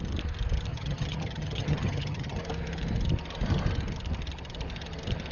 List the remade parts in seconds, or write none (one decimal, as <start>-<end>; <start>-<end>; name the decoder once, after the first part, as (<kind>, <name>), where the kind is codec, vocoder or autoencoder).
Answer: 0.7-2.4 (vocoder, HiFi-GAN)